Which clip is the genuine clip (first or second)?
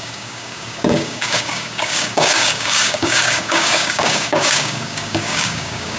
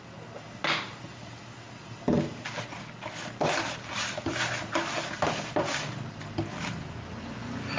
second